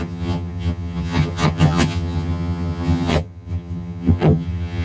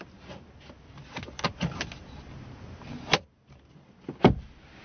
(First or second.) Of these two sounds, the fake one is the first